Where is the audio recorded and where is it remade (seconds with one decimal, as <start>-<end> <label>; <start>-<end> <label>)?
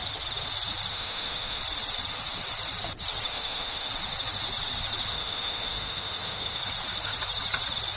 0.0-0.9 recorded; 0.9-1.6 remade; 1.6-3.3 recorded; 3.3-3.9 remade; 3.9-5.1 recorded; 5.1-6.6 remade; 6.6-8.0 recorded